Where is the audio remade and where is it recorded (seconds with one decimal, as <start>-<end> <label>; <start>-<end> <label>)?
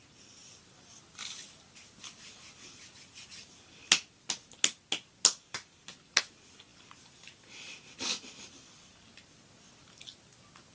0.0-0.4 recorded; 0.4-1.7 remade; 1.7-10.7 recorded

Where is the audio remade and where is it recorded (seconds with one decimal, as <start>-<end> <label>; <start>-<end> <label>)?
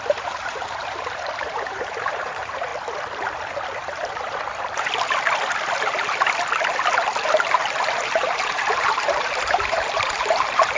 0.0-2.7 remade; 2.7-7.8 recorded; 7.8-10.8 remade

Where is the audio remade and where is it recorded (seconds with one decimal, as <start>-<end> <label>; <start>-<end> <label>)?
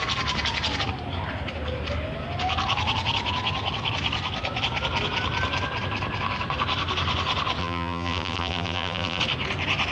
0.0-7.6 recorded; 7.6-9.2 remade; 9.2-9.9 recorded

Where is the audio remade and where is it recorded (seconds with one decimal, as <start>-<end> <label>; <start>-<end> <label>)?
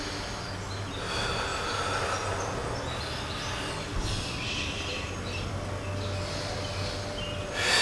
0.0-7.8 recorded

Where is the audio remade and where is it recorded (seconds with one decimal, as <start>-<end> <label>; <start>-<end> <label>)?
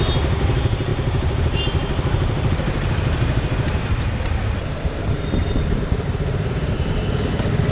0.0-0.9 recorded; 0.9-1.6 remade; 1.6-3.8 recorded; 3.8-7.3 remade; 7.3-7.7 recorded